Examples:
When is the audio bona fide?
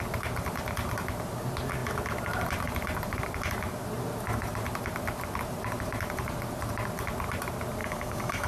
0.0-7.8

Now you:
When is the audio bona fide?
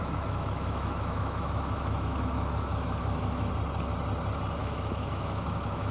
3.5-4.6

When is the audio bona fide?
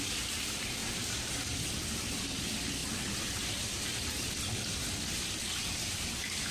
0.0-6.5